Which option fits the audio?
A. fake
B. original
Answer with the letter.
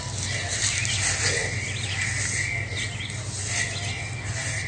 B